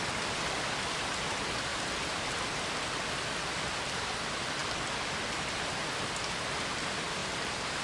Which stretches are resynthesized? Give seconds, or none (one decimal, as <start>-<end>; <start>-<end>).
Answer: 1.7-2.4; 7.2-7.8